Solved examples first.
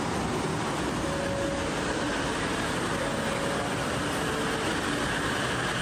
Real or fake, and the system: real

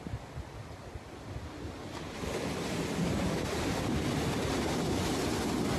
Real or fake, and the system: real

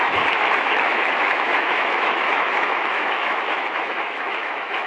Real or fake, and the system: fake, autoencoder, DAC-VAE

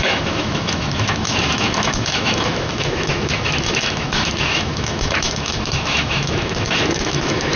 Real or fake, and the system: fake, autoencoder, DAC-VAE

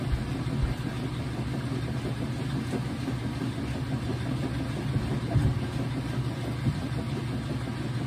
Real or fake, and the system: real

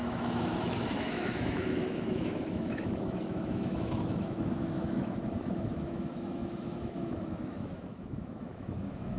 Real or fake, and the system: fake, autoencoder, DAC-VAE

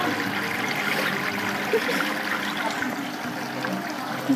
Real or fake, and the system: real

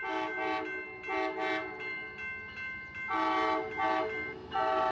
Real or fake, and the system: real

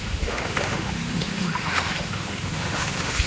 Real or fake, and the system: fake, autoencoder, DAC-VAE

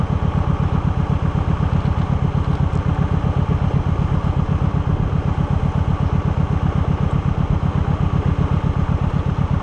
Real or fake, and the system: real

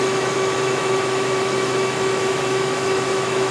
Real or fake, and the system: fake, autoencoder, DAC-VAE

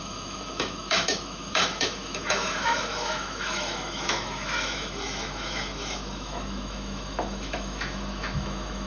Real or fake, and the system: fake, autoencoder, DAC-VAE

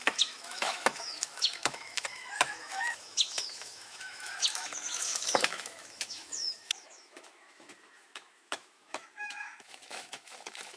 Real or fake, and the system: fake, autoencoder, DAC-VAE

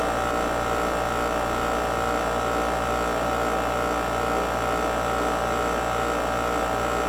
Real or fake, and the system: real